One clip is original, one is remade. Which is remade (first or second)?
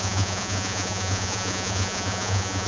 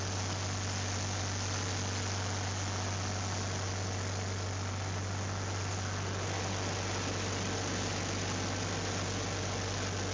first